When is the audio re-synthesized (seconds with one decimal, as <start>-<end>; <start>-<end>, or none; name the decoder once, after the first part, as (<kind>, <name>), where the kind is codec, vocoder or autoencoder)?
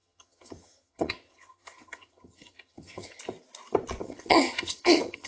0.0-3.2 (vocoder, HiFi-GAN); 4.0-5.3